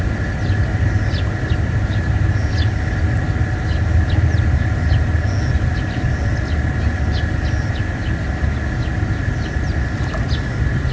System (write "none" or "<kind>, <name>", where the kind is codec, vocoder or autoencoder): none